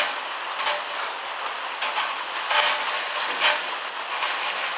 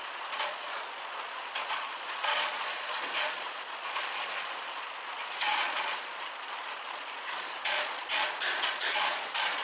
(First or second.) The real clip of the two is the first